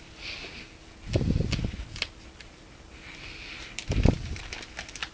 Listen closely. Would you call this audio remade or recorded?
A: recorded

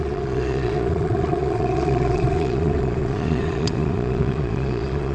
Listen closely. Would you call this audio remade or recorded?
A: remade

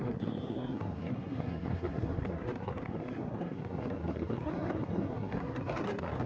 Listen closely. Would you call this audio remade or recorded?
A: remade